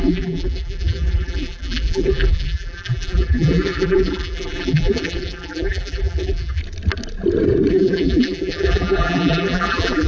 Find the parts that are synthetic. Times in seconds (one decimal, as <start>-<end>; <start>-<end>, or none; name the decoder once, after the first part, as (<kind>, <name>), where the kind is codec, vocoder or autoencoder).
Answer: 0.0-6.6 (vocoder, BigVGAN v2); 7.7-10.1